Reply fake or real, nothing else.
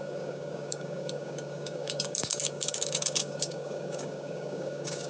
fake